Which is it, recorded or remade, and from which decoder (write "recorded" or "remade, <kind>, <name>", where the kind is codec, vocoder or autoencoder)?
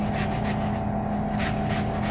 recorded